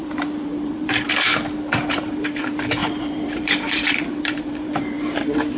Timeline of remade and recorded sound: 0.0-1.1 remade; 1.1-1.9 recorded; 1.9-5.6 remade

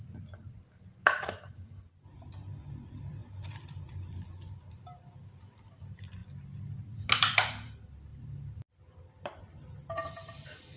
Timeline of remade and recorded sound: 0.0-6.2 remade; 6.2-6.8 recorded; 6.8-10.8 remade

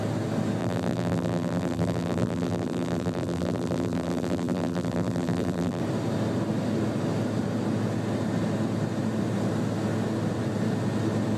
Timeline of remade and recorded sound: 0.0-0.6 recorded; 0.6-5.8 remade; 5.8-11.4 recorded

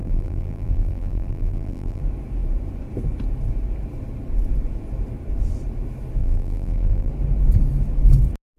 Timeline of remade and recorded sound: 0.0-2.0 remade; 2.0-6.2 recorded; 6.2-7.1 remade; 7.1-8.6 recorded